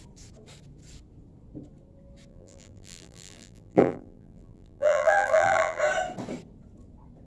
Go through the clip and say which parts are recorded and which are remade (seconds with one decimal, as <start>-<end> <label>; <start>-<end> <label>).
0.0-2.3 recorded; 2.3-5.8 remade; 5.8-7.3 recorded